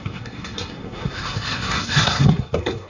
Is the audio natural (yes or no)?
no